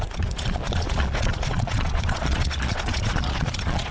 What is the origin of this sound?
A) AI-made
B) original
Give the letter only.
A